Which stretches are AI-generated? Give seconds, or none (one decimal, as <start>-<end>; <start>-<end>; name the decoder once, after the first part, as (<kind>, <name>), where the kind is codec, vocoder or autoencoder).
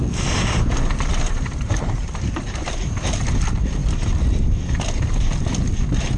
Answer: 1.1-3.2 (vocoder, BigVGAN v2)